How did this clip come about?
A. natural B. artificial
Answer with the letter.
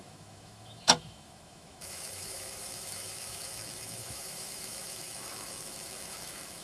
B